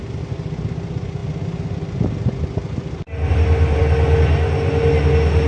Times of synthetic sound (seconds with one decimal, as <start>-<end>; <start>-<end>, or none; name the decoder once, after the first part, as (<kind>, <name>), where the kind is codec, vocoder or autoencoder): none